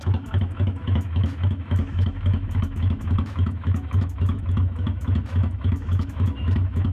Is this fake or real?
fake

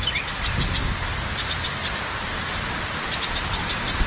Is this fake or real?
real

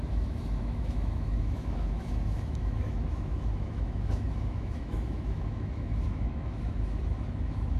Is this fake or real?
fake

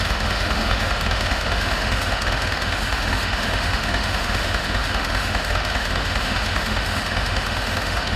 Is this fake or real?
fake